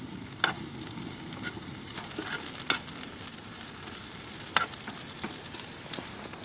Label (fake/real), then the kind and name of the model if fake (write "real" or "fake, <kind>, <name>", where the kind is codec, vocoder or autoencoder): real